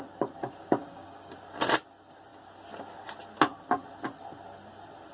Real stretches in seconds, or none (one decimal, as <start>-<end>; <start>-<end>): 0.0-0.8; 1.3-5.1